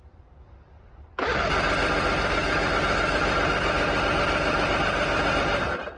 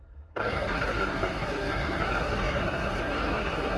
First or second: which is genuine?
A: first